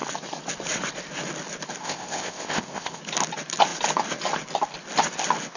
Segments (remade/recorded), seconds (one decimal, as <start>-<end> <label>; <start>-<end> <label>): 0.0-1.8 recorded; 1.8-3.0 remade; 3.0-5.6 recorded